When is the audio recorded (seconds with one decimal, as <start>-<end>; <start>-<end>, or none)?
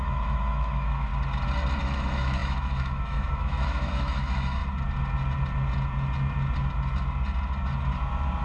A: 1.1-1.8; 4.6-8.4